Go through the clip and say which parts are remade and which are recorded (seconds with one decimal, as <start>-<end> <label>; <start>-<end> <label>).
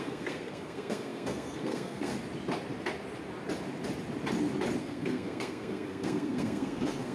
0.0-2.1 remade; 2.1-4.8 recorded; 4.8-7.1 remade